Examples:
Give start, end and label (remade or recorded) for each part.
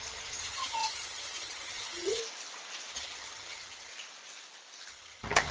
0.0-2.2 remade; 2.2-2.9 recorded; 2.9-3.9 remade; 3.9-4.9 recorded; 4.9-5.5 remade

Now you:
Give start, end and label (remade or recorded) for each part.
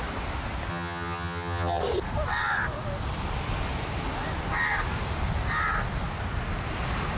0.0-0.7 recorded; 0.7-1.8 remade; 1.8-7.2 recorded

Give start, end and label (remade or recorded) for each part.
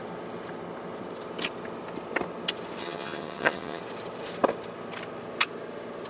0.0-2.8 recorded; 2.8-3.8 remade; 3.8-6.1 recorded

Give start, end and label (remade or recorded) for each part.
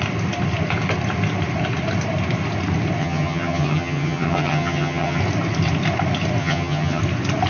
0.0-3.0 recorded; 3.0-5.2 remade; 5.2-6.4 recorded; 6.4-7.0 remade; 7.0-7.5 recorded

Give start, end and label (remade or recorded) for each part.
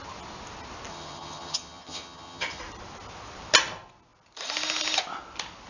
0.0-0.9 recorded; 0.9-2.6 remade; 2.6-5.7 recorded